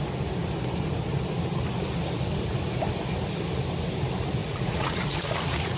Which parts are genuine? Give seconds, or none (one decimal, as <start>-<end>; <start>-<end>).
0.0-4.4

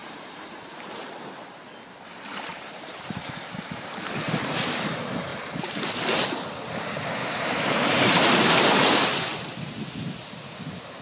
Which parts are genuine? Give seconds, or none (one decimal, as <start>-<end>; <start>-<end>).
1.0-2.5; 4.5-5.3; 5.9-7.2; 9.0-11.0